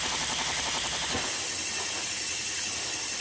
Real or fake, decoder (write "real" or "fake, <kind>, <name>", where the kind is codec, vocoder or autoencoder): real